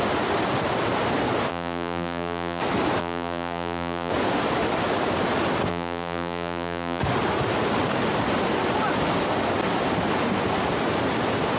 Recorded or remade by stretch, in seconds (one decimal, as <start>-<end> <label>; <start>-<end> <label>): 0.0-1.5 recorded; 1.5-2.6 remade; 2.6-3.0 recorded; 3.0-4.1 remade; 4.1-5.7 recorded; 5.7-7.0 remade; 7.0-11.6 recorded